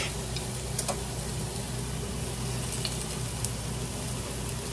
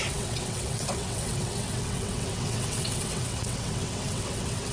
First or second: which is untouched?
first